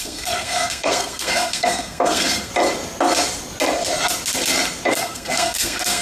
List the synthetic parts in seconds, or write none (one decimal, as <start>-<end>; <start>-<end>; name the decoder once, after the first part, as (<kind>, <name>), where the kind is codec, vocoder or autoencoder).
0.0-2.5 (codec, SNAC); 4.9-6.0